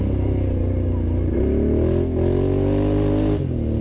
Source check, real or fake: real